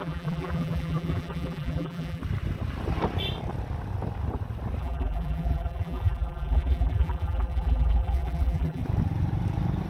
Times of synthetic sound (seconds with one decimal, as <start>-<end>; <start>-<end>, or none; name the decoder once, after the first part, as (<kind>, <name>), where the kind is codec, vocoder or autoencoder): 0.0-2.2 (vocoder, BigVGAN v2); 4.8-8.8